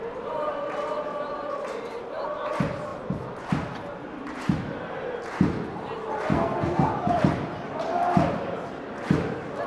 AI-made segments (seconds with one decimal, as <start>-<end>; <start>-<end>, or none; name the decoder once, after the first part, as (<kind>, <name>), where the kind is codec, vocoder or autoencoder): 6.3-6.9 (codec, SNAC)